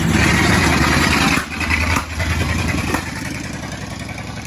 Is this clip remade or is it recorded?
remade